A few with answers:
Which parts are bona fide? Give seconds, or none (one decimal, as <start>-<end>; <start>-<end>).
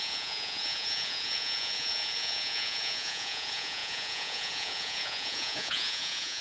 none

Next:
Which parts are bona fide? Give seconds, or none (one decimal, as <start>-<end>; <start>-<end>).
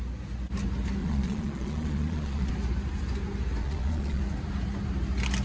0.0-1.0; 2.5-3.6; 4.2-5.4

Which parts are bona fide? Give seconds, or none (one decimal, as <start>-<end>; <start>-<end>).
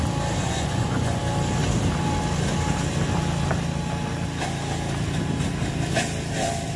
0.0-0.4; 1.2-6.8